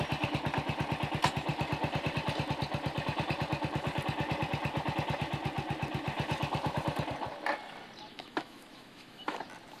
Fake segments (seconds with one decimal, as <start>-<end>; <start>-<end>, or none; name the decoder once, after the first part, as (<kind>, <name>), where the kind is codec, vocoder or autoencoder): 8.1-9.4 (autoencoder, DAC-VAE)